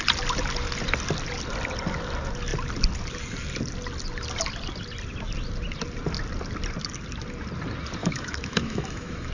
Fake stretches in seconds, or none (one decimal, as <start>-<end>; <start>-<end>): 8.0-9.3